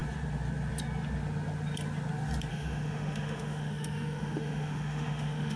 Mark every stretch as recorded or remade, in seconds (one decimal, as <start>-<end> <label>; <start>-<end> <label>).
0.0-2.5 recorded; 2.5-5.6 remade